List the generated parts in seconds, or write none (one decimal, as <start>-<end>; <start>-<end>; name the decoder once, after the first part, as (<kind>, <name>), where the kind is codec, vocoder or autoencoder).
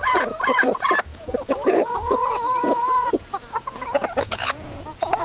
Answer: 0.0-5.2 (vocoder, Vocos)